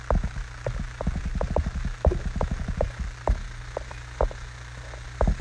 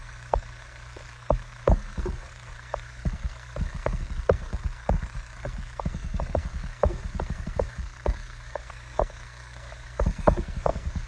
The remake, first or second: second